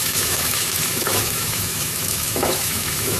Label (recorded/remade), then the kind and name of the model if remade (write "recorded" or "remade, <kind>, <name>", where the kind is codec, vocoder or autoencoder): remade, autoencoder, DAC-VAE